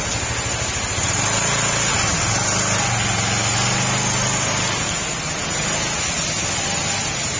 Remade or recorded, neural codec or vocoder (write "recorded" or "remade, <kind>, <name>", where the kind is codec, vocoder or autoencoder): recorded